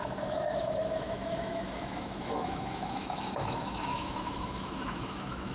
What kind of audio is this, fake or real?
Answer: fake